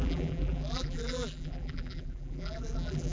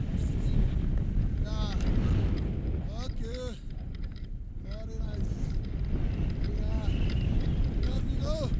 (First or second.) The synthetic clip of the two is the first